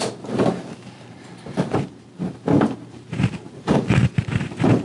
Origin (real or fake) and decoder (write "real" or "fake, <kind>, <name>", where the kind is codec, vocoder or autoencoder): fake, vocoder, BigVGAN v2